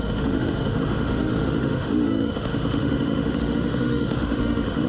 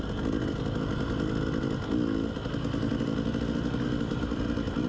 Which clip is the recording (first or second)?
second